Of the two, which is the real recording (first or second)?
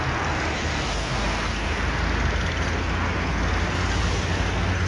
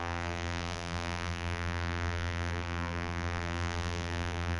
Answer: first